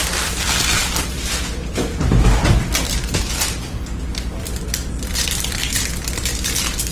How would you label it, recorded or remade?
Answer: remade